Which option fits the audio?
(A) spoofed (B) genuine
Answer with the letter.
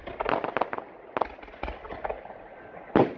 B